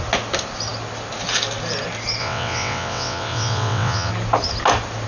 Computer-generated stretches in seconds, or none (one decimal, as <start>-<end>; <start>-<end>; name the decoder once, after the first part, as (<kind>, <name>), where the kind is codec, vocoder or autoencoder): 2.2-4.1 (vocoder, WaveNeXt)